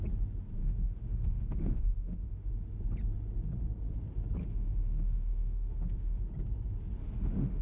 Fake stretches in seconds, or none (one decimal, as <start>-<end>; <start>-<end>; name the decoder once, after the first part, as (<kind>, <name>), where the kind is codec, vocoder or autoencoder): 0.6-2.5 (autoencoder, DAC-VAE); 4.4-6.2; 7.0-7.6